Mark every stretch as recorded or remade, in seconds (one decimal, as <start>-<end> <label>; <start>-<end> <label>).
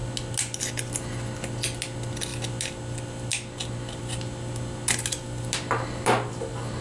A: 0.0-6.8 recorded